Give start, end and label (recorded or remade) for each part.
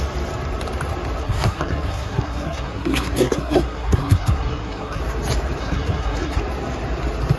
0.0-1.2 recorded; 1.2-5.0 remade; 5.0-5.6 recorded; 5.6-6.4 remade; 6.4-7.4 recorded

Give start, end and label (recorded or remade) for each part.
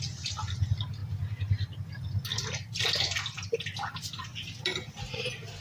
0.0-5.6 recorded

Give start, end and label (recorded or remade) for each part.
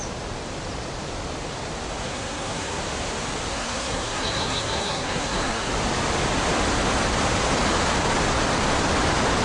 0.0-2.0 recorded; 2.0-2.8 remade; 2.8-3.5 recorded; 3.5-5.7 remade; 5.7-9.4 recorded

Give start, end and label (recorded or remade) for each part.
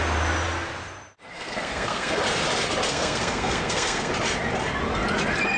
0.0-1.3 recorded; 1.3-2.2 remade; 2.2-2.9 recorded; 2.9-4.1 remade; 4.1-5.6 recorded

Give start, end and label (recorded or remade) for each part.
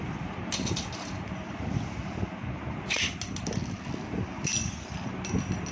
0.0-5.7 recorded